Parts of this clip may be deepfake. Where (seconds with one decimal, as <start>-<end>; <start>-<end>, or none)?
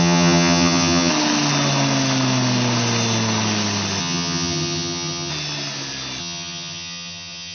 0.0-1.1; 4.0-5.3; 6.2-7.5